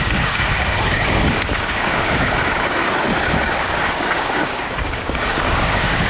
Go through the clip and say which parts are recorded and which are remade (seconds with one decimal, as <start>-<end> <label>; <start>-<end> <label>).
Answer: 0.0-2.8 remade; 2.8-3.6 recorded; 3.6-6.1 remade